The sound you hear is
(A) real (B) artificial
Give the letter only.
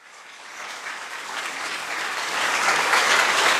B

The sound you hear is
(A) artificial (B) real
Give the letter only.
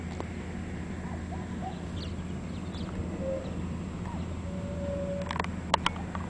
B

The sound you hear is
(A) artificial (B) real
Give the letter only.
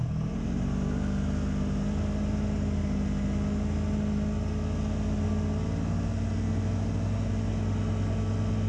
B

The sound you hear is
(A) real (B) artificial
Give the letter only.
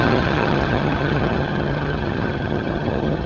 B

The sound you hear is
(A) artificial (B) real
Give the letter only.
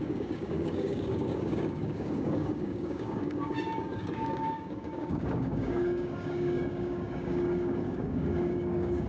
A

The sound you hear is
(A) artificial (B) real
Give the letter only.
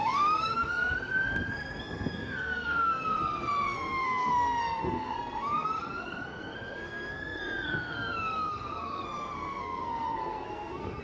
A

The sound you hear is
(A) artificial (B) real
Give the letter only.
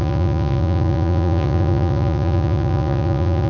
A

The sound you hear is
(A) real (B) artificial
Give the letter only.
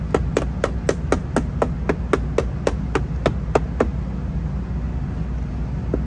A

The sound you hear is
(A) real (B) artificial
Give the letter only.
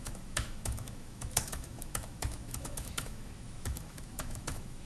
B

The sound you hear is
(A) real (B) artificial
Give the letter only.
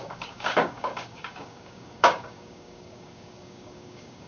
B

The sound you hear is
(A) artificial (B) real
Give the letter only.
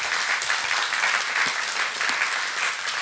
B